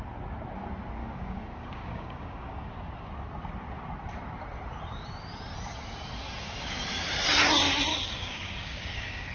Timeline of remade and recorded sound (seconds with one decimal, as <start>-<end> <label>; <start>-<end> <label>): 0.0-1.0 recorded; 1.0-2.7 remade; 2.7-7.9 recorded; 7.9-9.3 remade